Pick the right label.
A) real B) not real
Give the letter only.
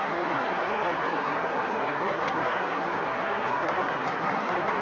B